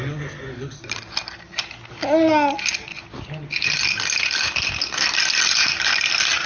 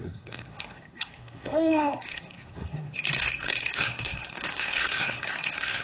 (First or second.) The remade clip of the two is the second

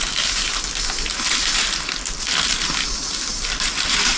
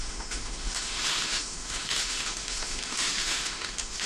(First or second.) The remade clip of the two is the second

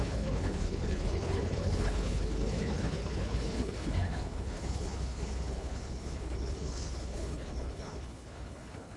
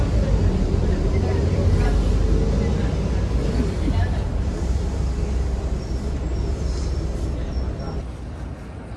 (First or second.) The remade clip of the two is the first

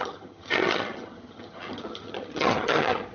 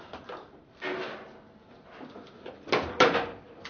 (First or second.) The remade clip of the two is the first